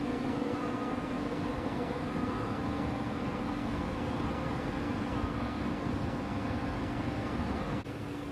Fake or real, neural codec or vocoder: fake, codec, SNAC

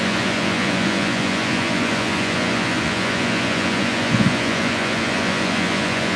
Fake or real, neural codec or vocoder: fake, vocoder, Vocos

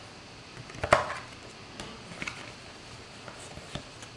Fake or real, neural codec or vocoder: real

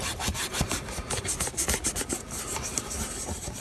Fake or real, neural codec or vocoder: real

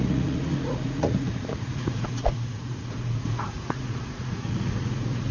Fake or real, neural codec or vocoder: fake, vocoder, Vocos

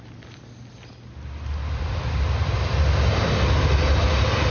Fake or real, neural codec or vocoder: real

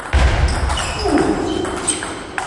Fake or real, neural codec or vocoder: real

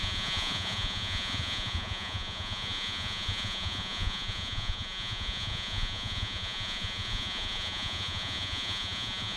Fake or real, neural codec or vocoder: fake, vocoder, Vocos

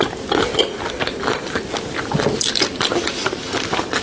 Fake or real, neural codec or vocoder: real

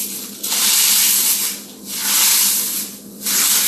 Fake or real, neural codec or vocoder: real